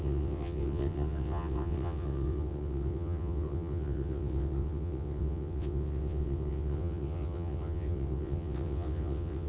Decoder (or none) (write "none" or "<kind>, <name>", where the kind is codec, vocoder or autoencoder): vocoder, WaveNeXt